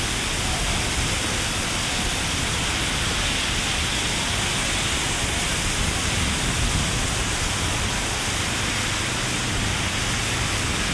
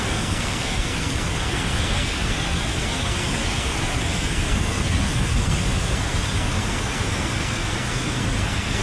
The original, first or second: first